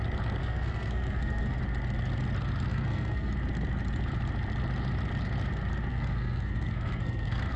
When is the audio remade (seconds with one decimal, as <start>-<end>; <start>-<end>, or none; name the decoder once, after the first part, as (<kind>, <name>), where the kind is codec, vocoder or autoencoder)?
0.4-1.6 (codec, SNAC); 2.7-3.3; 5.9-7.6